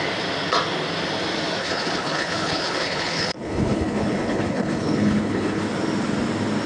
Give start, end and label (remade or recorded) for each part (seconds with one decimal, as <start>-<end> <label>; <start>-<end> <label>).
0.0-1.6 recorded; 1.6-5.6 remade; 5.6-6.7 recorded